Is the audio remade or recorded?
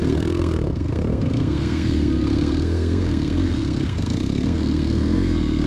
remade